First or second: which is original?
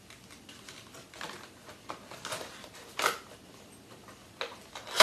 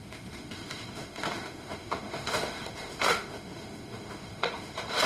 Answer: first